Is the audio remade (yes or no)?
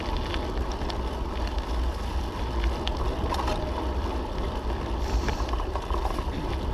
no